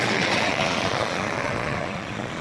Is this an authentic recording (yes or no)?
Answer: no